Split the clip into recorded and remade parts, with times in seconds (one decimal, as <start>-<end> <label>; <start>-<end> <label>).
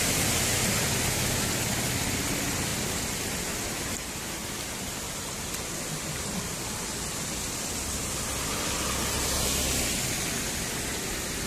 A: 0.0-11.5 recorded